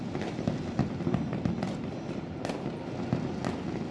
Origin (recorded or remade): recorded